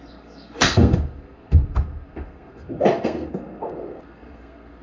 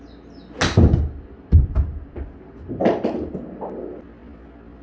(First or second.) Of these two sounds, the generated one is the first